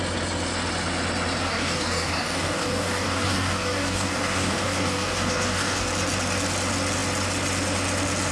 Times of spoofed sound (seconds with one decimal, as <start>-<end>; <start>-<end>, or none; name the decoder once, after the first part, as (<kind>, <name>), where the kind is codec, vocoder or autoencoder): 1.4-5.9 (codec, DAC)